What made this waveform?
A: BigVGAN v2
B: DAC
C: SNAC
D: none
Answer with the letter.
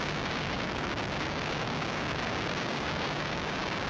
B